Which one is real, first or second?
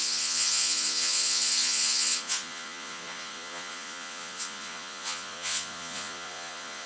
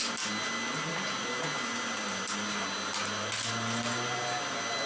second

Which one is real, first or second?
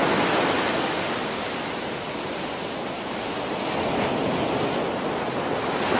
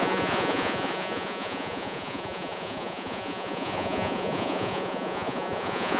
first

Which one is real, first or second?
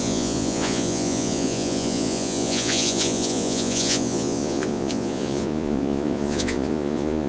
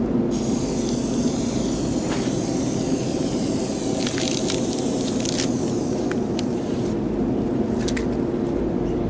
second